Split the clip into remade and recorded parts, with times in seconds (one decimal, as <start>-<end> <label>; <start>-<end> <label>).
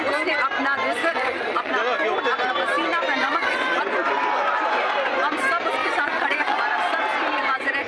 0.0-1.0 recorded; 1.0-1.7 remade; 1.7-3.2 recorded; 3.2-3.8 remade; 3.8-5.8 recorded; 5.8-6.6 remade; 6.6-7.9 recorded